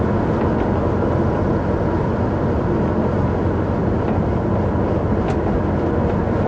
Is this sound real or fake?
real